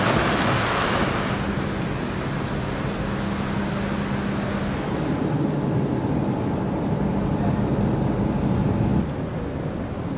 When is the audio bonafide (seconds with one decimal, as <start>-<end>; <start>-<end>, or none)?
0.0-10.2